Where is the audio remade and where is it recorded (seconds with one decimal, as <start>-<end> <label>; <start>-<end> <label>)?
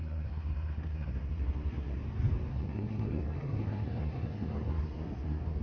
0.0-2.0 remade; 2.0-2.5 recorded; 2.5-5.6 remade